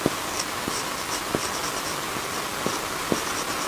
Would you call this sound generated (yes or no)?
no